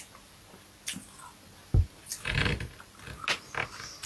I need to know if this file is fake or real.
real